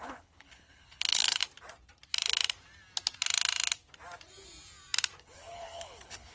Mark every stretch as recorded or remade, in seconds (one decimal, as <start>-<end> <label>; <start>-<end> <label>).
0.0-1.4 remade; 1.4-5.2 recorded; 5.2-6.3 remade